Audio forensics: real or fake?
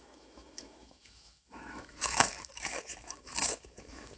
fake